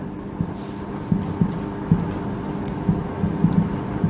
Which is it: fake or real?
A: real